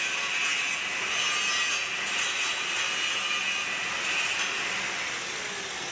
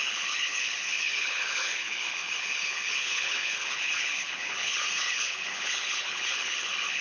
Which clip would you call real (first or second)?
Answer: first